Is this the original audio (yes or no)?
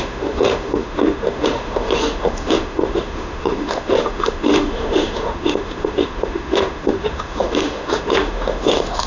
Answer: no